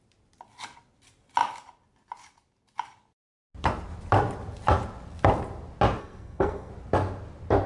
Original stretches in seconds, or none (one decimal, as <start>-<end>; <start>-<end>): 0.0-6.0; 6.7-7.7